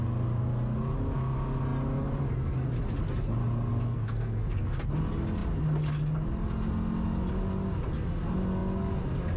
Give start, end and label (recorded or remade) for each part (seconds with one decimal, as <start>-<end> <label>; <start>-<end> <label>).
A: 0.0-3.7 recorded; 3.7-4.9 remade; 4.9-9.4 recorded